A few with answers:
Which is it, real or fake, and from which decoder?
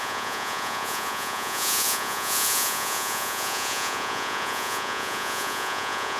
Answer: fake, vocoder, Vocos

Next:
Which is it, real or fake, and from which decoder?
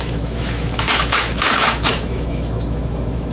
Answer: fake, autoencoder, DAC-VAE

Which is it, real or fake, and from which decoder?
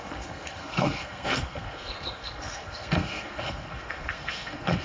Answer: fake, codec, SNAC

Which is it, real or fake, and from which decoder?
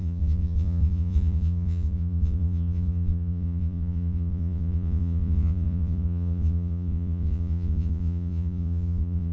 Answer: fake, vocoder, Vocos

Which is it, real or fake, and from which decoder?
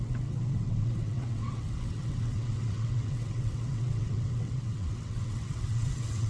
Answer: fake, vocoder, WaveNeXt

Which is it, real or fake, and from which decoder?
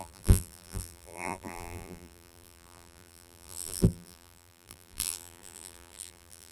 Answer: fake, vocoder, BigVGAN v2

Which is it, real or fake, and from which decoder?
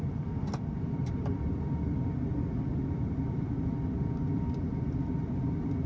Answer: fake, vocoder, BigVGAN v2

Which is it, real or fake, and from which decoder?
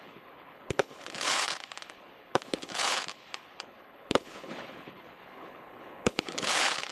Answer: fake, codec, HILCodec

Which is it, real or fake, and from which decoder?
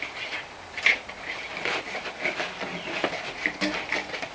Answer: fake, vocoder, BigVGAN v2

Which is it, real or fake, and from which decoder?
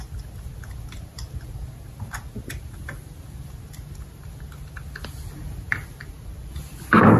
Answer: real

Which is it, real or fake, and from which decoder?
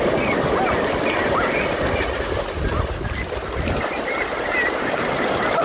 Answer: real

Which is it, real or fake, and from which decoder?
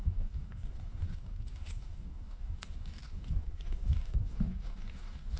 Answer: fake, codec, DAC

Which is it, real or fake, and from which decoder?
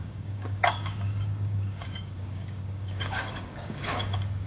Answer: fake, codec, DAC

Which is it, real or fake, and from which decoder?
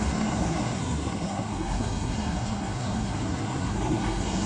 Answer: fake, codec, SNAC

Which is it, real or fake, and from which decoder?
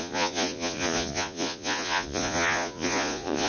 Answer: fake, vocoder, Vocos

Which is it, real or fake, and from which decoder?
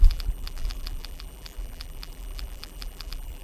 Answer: fake, vocoder, BigVGAN v2